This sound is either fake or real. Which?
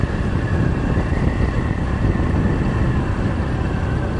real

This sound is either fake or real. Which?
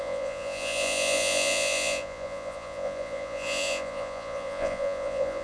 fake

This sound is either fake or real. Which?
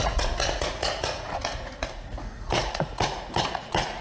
fake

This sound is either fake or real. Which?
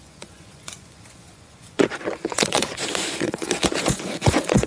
fake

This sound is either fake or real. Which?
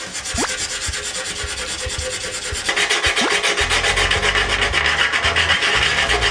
real